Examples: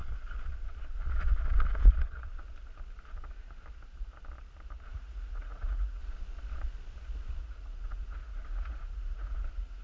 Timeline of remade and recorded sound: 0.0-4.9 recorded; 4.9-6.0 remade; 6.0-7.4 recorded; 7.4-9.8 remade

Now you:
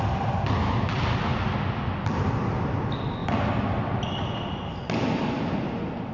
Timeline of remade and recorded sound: 0.0-6.1 recorded

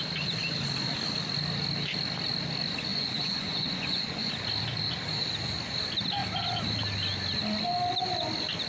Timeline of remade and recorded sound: 0.0-2.9 recorded; 2.9-4.3 remade; 4.3-8.7 recorded